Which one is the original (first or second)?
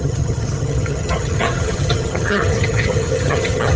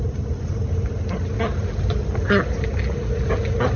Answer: second